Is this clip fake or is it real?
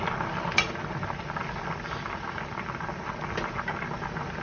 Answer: real